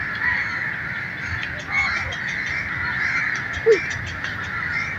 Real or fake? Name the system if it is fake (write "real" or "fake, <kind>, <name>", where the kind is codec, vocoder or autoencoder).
real